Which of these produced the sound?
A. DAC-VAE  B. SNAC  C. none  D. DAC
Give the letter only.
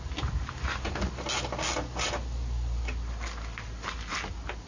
C